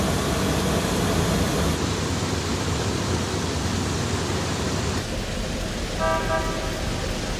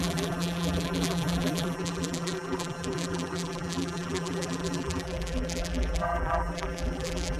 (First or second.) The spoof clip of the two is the second